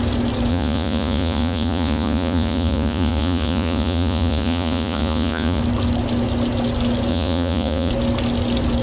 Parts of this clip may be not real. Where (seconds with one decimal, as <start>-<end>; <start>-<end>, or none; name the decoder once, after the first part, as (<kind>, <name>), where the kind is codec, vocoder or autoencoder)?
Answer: 0.5-5.6 (vocoder, Vocos); 7.1-7.9